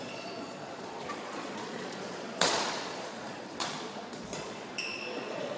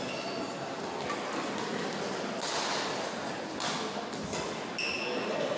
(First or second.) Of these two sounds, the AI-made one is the first